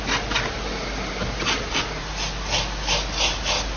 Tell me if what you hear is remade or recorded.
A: recorded